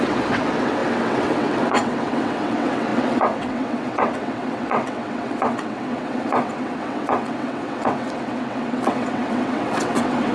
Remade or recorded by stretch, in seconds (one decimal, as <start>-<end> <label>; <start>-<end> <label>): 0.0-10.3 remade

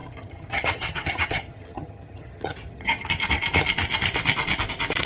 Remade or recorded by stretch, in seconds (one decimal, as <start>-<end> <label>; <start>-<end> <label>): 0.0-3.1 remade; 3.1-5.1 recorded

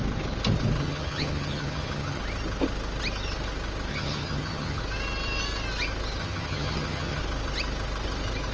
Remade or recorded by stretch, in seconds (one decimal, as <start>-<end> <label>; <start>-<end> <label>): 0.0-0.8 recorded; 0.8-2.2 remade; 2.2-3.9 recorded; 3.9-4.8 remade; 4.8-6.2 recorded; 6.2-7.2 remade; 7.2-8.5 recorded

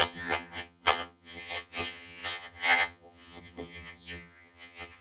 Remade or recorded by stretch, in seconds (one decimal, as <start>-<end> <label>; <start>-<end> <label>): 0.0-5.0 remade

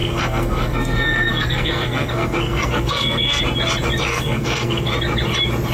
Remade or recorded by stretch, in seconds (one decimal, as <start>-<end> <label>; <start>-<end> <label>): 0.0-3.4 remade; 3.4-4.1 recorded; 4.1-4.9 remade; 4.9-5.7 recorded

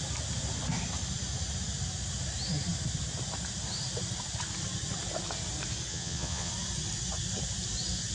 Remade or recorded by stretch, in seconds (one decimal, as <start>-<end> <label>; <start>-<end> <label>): 0.0-5.9 recorded; 5.9-6.5 remade; 6.5-8.1 recorded

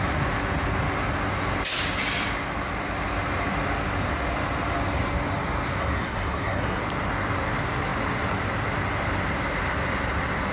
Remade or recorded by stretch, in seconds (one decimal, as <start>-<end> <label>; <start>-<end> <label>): 0.0-5.8 recorded; 5.8-6.8 remade; 6.8-10.5 recorded

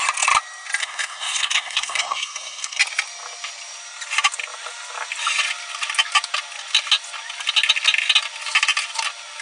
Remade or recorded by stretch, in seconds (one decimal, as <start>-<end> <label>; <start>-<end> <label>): 0.0-0.8 recorded; 0.8-2.8 remade; 2.8-9.4 recorded